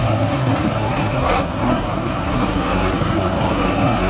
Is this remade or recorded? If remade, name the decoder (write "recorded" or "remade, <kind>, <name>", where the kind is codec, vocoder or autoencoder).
remade, codec, SNAC